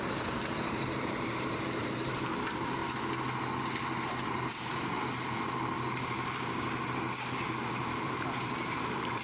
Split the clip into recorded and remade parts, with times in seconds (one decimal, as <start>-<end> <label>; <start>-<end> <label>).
0.0-2.8 remade; 2.8-7.2 recorded; 7.2-9.2 remade